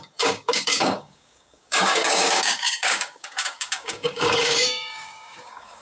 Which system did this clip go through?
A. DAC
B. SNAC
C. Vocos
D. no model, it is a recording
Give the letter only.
A